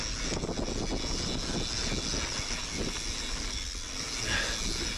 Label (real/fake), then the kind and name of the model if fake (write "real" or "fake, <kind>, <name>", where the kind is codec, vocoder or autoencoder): real